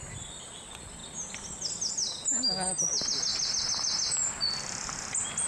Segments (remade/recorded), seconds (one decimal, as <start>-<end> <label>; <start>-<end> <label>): 0.0-5.5 recorded